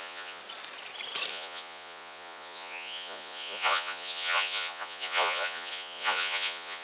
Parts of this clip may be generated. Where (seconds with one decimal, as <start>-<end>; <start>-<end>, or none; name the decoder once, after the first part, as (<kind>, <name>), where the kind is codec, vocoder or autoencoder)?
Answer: 0.0-0.4 (vocoder, Vocos); 1.3-6.8